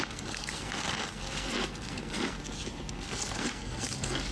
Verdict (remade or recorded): remade